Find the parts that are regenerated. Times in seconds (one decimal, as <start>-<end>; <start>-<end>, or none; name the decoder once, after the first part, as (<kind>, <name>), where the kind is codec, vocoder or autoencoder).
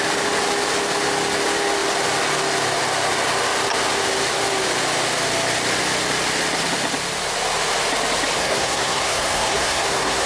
8.4-10.3 (codec, SNAC)